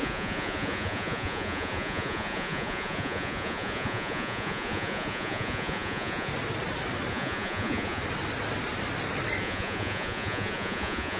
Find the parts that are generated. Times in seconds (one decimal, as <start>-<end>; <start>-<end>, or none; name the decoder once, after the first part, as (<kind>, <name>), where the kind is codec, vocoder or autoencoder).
0.0-6.3 (vocoder, Vocos); 7.1-8.0; 9.4-11.2